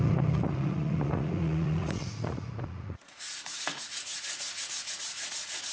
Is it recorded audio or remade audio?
remade